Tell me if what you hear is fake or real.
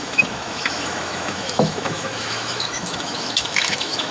fake